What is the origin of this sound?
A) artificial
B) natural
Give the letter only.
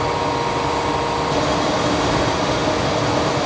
B